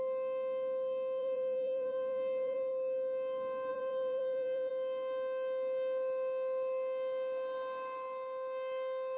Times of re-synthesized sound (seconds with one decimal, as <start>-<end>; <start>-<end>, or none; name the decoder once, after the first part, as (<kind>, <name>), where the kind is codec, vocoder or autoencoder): 1.2-2.7 (vocoder, BigVGAN v2); 3.7-4.7